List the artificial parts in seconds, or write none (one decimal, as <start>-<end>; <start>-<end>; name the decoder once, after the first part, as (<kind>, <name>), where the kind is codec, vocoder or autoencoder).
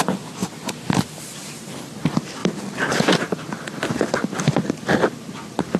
none